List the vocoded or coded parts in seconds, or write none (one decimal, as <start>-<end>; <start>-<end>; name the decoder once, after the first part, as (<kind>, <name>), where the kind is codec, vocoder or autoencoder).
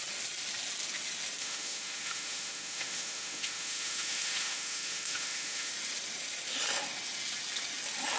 1.4-5.7 (autoencoder, DAC-VAE)